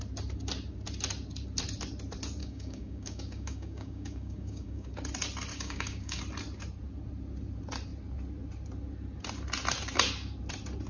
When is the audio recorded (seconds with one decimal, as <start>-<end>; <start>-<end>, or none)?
0.0-2.4; 4.9-5.5; 6.2-10.9